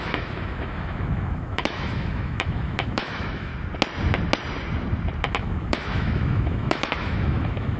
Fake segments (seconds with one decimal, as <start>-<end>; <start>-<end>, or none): 0.0-3.5; 5.3-7.8